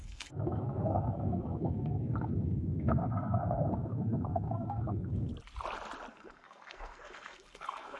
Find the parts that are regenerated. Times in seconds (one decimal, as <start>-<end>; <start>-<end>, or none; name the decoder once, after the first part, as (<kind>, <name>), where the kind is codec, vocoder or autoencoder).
0.0-5.3 (codec, SNAC); 6.1-8.0